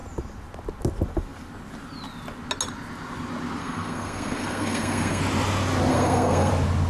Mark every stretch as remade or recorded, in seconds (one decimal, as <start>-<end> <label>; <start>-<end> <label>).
0.0-3.6 recorded; 3.6-5.2 remade; 5.2-5.9 recorded; 5.9-6.5 remade; 6.5-6.9 recorded